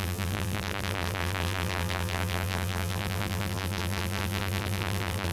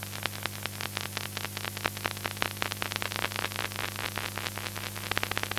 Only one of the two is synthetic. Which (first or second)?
first